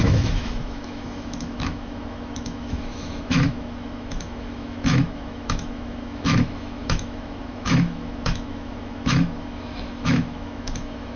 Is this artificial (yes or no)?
yes